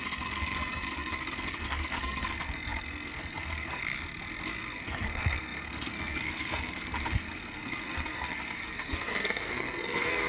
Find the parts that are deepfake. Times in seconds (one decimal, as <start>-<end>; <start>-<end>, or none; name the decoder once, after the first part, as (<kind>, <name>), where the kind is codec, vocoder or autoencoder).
0.0-3.8 (codec, SNAC); 4.6-10.3